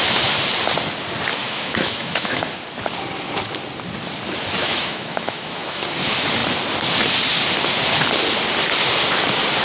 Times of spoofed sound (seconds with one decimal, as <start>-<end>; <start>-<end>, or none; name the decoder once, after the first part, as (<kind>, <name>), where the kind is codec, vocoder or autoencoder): 1.4-2.6 (autoencoder, DAC-VAE); 4.6-5.8